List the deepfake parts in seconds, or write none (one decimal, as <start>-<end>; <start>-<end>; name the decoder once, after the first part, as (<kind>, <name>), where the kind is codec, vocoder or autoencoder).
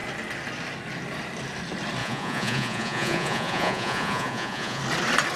2.0-4.8 (vocoder, Vocos)